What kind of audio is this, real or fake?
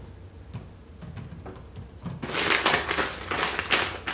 real